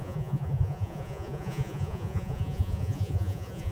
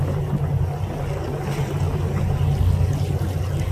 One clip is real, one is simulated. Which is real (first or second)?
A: second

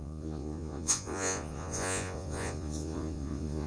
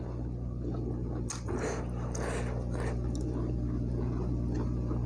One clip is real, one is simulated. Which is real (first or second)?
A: second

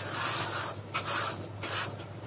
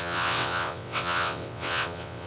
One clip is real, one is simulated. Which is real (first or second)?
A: first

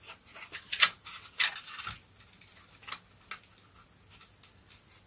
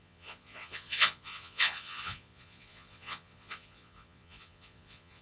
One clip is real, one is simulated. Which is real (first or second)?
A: first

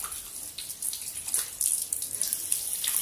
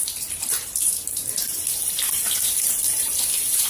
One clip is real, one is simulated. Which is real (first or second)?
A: first